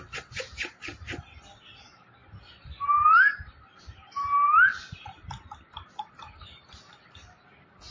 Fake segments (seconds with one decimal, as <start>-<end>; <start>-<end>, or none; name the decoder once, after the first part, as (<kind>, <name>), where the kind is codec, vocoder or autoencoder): 0.0-0.9 (vocoder, BigVGAN v2); 1.6-7.9